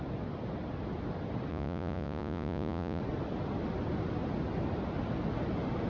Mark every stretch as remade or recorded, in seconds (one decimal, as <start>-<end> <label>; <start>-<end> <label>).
0.0-1.5 recorded; 1.5-3.0 remade; 3.0-5.9 recorded